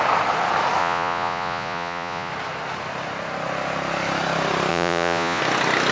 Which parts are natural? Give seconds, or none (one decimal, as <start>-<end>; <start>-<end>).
0.0-0.8; 2.3-4.7; 5.4-5.9